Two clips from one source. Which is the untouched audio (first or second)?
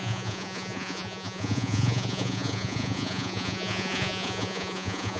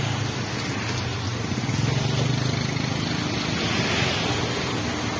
second